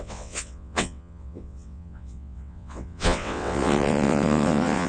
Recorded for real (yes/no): no